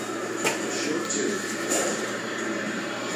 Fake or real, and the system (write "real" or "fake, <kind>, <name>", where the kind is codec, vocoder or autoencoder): fake, vocoder, BigVGAN v2